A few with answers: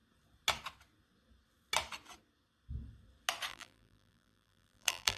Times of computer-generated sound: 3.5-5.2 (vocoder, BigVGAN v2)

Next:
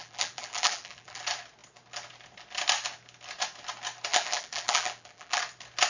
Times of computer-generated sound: 0.0-1.2 (vocoder, BigVGAN v2); 4.1-5.4